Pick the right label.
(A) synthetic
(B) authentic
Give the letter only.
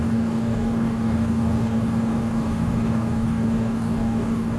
A